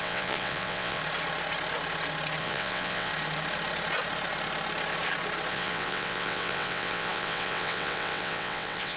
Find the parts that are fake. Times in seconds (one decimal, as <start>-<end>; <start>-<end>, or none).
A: 0.0-1.0; 2.4-3.1; 5.5-9.0